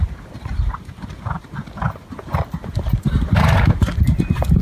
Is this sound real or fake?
fake